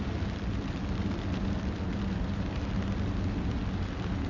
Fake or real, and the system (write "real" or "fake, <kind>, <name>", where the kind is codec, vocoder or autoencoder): real